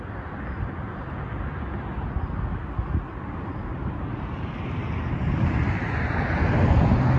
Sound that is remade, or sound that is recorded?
recorded